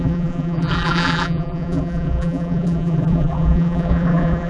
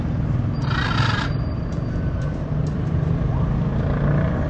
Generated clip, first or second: first